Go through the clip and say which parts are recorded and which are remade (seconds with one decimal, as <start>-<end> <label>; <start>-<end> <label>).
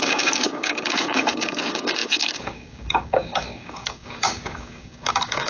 0.0-5.5 remade